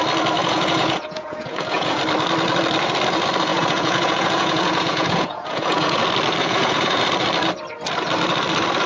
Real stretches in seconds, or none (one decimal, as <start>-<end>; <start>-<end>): 0.0-0.4; 2.0-3.5; 6.0-6.4; 7.0-8.9